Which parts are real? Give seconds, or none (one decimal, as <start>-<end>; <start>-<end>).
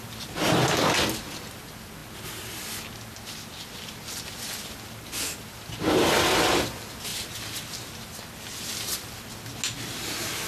0.0-10.5